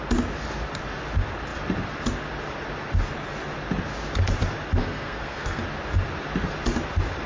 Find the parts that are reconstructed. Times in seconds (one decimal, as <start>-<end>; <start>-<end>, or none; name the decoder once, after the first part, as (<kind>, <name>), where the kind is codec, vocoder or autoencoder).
4.8-5.6 (codec, SNAC)